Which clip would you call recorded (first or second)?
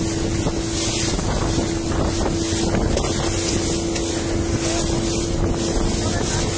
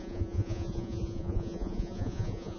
first